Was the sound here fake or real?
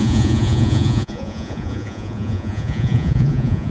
fake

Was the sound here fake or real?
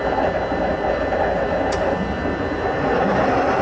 real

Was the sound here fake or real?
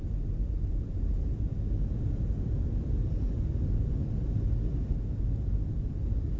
real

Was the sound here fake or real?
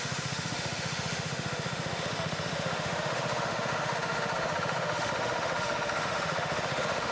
fake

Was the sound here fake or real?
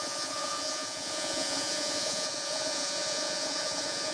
fake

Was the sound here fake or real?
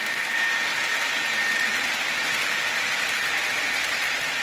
real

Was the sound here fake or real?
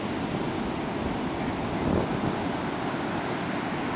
real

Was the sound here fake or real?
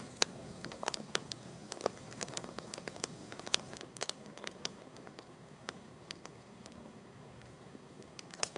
fake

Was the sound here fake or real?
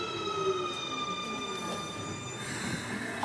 real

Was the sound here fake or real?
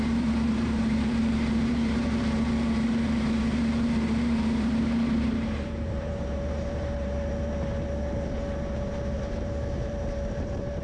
fake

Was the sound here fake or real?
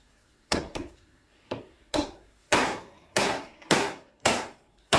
fake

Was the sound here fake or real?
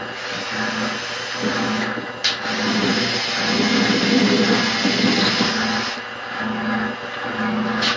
real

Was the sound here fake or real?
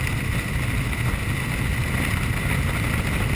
real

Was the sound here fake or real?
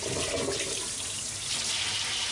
real